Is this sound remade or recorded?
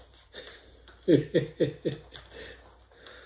recorded